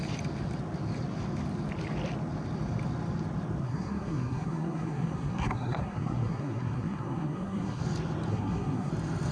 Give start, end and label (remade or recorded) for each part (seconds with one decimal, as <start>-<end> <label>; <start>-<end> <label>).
0.0-3.6 recorded; 3.6-7.8 remade; 7.8-8.3 recorded; 8.3-8.9 remade; 8.9-9.3 recorded